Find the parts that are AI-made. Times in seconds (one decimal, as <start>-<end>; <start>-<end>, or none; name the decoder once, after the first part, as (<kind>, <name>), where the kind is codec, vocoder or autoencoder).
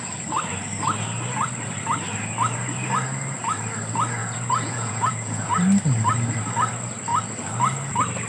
4.2-5.5 (vocoder, Vocos)